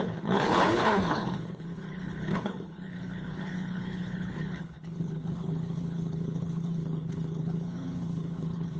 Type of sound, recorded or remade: remade